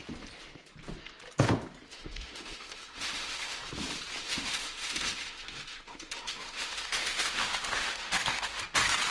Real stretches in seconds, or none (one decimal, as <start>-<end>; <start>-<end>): 0.0-1.9; 3.6-4.2; 8.6-9.1